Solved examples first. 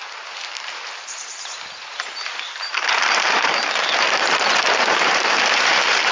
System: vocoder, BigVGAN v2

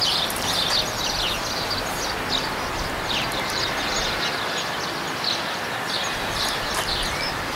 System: none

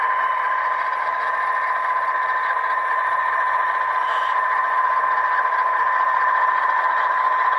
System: vocoder, BigVGAN v2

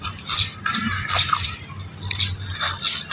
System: none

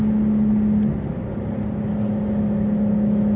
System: none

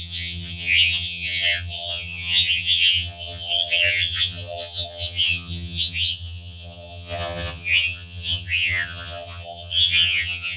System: vocoder, HiFi-GAN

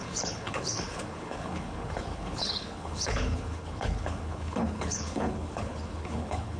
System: codec, HILCodec